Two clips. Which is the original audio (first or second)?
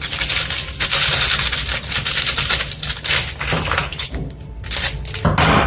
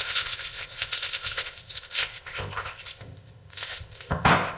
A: first